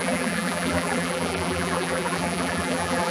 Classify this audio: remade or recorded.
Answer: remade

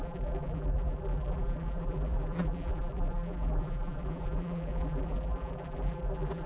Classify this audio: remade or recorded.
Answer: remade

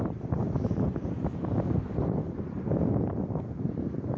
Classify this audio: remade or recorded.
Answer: remade